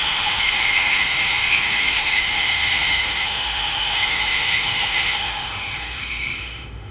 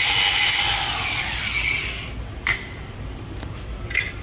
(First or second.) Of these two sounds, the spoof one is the first